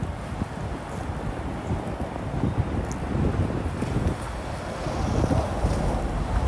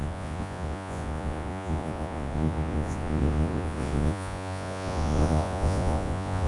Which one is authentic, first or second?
first